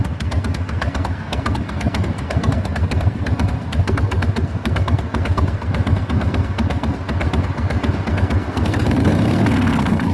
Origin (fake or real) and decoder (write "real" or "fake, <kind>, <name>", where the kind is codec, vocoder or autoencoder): fake, codec, SNAC